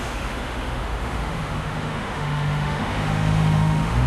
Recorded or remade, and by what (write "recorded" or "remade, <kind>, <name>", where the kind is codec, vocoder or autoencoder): remade, autoencoder, DAC-VAE